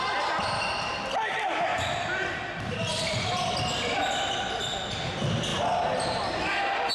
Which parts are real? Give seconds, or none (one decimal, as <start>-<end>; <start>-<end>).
0.0-6.9